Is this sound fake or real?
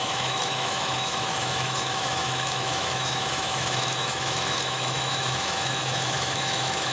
fake